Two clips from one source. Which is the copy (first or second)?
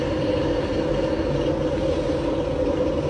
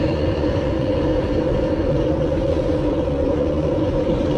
second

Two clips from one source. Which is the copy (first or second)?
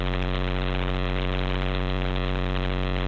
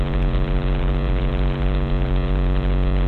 second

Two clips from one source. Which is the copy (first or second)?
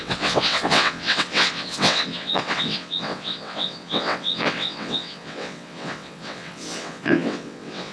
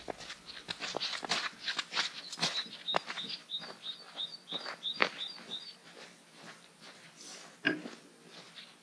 first